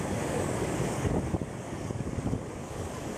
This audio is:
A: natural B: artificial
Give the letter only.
B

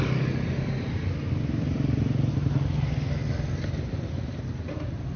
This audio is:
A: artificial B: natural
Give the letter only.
B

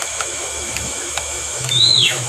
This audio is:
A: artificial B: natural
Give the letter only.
A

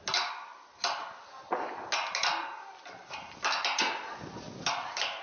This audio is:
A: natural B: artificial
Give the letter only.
A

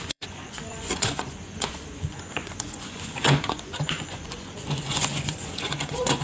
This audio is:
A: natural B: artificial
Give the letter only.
B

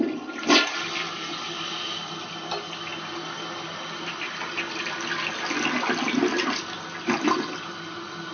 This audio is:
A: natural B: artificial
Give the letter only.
A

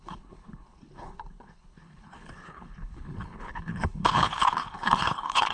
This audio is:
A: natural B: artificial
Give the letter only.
B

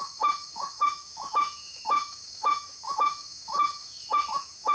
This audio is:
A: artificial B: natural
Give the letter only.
A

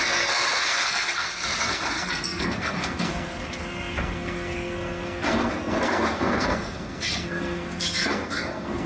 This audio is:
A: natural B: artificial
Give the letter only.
B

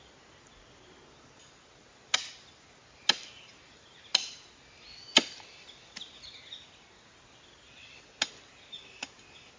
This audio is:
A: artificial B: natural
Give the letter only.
B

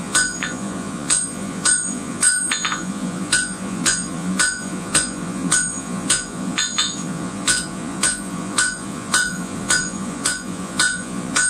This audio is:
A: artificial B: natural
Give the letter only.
A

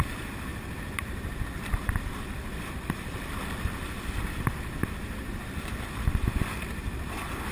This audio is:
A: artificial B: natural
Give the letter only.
A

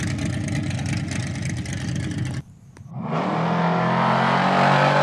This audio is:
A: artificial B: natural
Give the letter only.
B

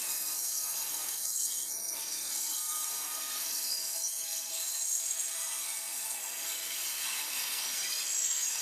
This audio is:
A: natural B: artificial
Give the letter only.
B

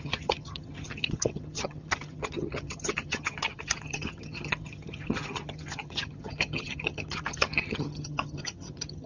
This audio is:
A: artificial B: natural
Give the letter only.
A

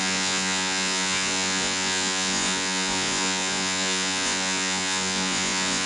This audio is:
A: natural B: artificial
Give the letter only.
B